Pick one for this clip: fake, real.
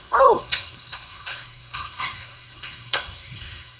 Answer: fake